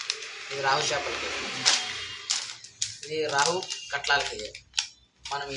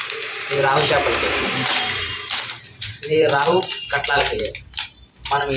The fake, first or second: second